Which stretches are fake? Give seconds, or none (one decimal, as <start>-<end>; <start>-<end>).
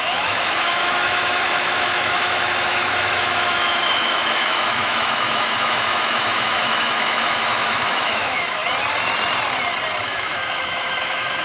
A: 0.0-8.6; 10.0-11.4